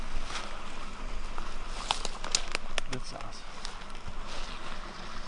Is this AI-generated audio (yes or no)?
no